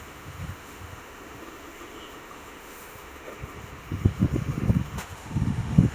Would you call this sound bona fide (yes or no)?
no